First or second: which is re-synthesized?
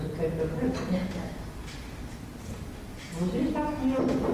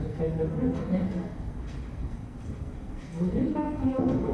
second